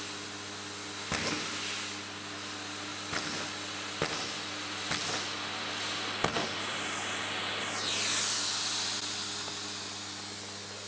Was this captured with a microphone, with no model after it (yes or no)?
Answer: yes